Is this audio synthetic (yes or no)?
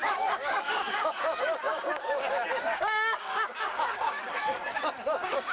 yes